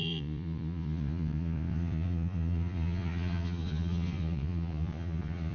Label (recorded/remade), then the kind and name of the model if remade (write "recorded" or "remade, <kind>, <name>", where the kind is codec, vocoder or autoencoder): remade, vocoder, Vocos